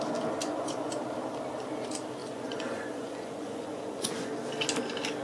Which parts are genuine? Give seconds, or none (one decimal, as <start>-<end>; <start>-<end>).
0.0-0.4; 1.0-2.2; 4.3-5.2